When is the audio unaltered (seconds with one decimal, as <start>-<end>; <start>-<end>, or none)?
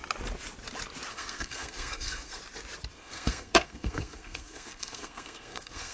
0.0-1.1; 2.4-3.0